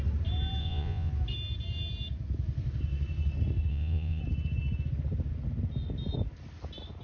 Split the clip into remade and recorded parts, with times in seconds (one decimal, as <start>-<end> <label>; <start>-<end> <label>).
0.0-0.6 recorded; 0.6-1.1 remade; 1.1-3.7 recorded; 3.7-4.2 remade; 4.2-7.0 recorded